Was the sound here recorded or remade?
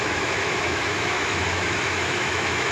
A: remade